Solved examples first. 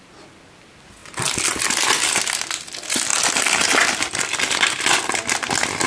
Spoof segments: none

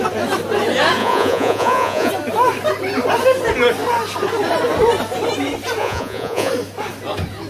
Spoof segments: 1.0-2.1; 5.8-6.5

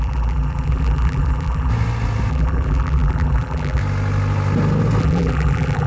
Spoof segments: 0.0-1.7; 2.3-3.8; 5.0-5.9

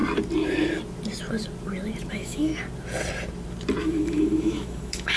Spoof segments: 2.1-2.5; 3.8-5.2

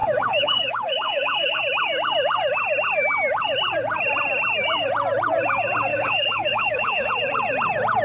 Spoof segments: 0.0-1.6; 5.9-7.1